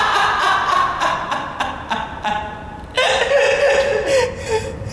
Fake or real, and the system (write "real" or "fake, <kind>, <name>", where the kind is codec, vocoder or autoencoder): real